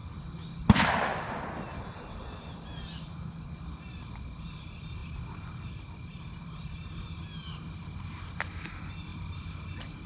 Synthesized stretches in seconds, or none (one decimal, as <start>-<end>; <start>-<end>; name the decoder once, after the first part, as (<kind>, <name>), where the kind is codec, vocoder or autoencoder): none